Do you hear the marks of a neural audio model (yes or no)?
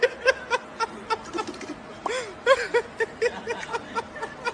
no